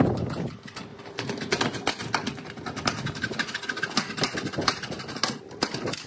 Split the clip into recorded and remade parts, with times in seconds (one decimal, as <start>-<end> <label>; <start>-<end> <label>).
0.0-6.1 recorded